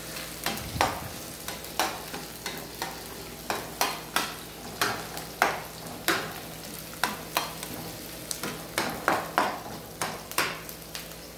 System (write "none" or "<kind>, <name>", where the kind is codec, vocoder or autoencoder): none